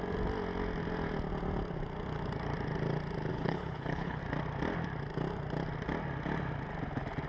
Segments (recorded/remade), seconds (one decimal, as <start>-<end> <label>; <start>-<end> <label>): 0.0-3.3 recorded; 3.3-4.2 remade; 4.2-7.3 recorded